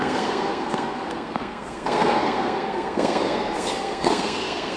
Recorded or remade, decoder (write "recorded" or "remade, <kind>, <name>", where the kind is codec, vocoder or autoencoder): remade, codec, SNAC